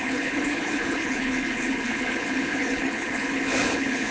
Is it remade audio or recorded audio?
remade